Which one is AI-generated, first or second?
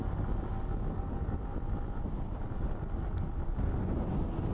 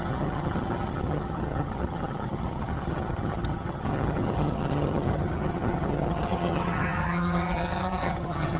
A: second